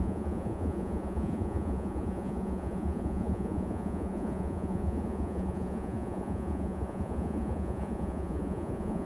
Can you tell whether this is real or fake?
fake